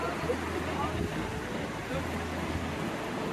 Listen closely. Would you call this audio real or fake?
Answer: real